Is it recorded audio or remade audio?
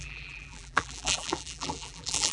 remade